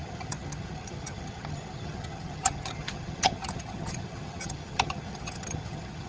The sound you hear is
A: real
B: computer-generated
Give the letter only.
B